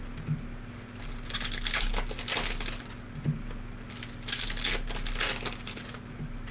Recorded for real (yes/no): yes